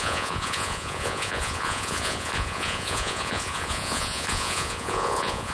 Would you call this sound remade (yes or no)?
yes